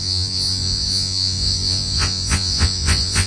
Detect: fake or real fake